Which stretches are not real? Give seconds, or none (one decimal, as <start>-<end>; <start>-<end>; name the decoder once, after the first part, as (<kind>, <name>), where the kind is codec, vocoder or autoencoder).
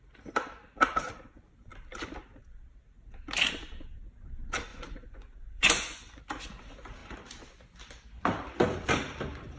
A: 4.7-6.2 (vocoder, Vocos)